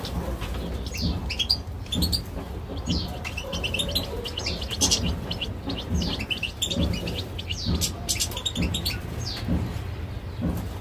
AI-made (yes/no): no